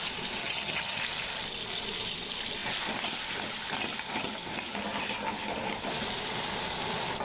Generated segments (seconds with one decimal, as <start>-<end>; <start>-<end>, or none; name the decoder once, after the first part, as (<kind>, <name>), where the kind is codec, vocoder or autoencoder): 0.4-1.0 (vocoder, HiFi-GAN)